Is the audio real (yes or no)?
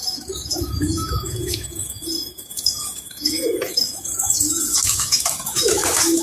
no